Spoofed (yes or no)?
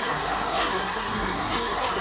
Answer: yes